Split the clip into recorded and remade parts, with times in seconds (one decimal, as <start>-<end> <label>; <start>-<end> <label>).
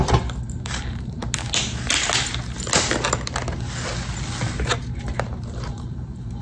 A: 0.0-0.6 recorded; 0.6-1.2 remade; 1.2-5.0 recorded; 5.0-6.4 remade